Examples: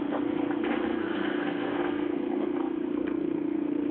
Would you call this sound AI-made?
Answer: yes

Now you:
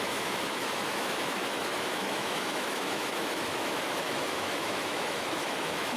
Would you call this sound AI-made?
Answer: yes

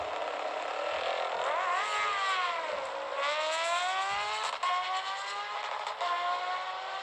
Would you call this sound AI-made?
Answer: no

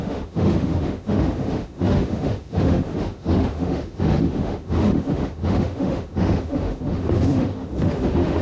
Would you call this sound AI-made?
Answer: yes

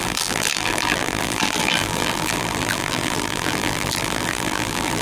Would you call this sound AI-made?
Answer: yes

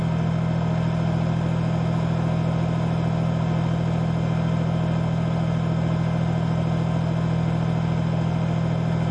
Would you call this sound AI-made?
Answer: no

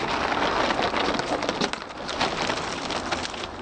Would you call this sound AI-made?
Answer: no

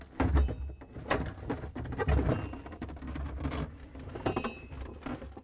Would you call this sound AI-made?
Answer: no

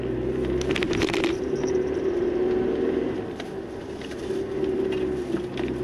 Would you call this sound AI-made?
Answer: no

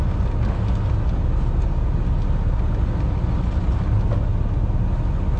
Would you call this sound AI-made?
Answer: no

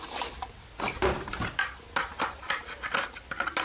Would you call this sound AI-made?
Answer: no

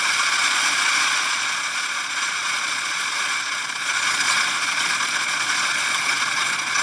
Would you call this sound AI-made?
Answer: yes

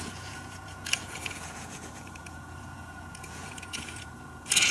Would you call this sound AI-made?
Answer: yes